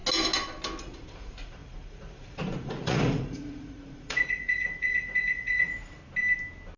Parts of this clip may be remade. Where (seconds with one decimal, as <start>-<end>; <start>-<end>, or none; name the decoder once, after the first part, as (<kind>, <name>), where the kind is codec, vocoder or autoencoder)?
0.8-6.0 (vocoder, Vocos)